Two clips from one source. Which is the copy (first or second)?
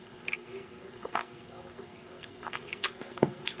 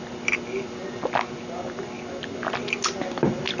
first